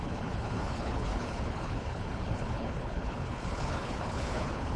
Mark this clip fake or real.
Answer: fake